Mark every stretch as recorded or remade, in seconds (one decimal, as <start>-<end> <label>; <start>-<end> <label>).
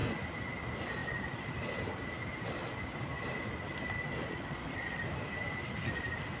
0.0-4.2 recorded; 4.2-5.0 remade; 5.0-6.4 recorded